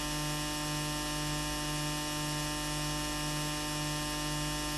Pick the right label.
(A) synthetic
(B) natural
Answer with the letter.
B